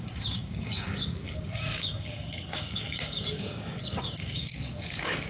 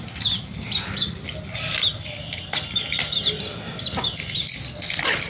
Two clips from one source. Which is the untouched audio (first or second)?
second